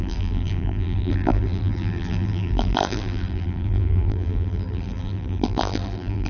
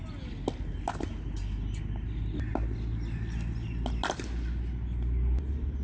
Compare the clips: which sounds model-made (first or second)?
first